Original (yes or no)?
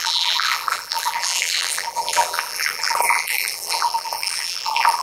no